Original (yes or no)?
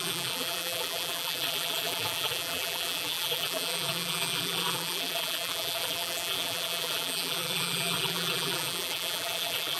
no